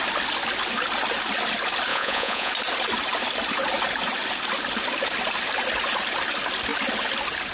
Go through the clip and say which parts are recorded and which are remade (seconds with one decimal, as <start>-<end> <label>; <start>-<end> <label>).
0.0-1.9 recorded; 1.9-2.5 remade; 2.5-7.5 recorded